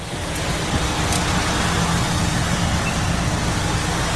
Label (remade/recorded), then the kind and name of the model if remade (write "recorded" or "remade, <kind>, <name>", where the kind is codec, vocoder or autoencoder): recorded